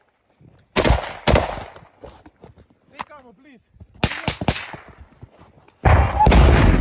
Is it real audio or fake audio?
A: real